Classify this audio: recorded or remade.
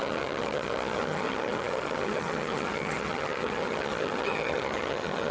remade